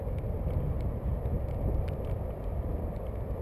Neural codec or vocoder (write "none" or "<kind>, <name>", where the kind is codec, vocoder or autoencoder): none